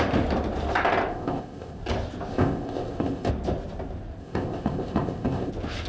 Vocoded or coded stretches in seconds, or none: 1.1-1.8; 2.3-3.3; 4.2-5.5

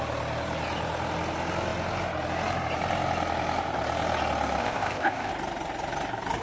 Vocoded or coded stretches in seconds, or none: 4.6-5.3

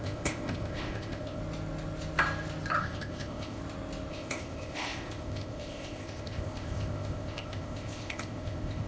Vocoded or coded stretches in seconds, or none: 0.0-1.4; 2.8-3.6; 4.1-8.9

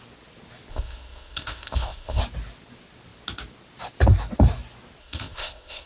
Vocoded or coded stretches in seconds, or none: 0.7-2.2; 5.0-5.9

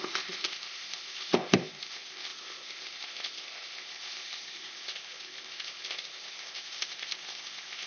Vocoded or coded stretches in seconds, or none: 0.0-7.9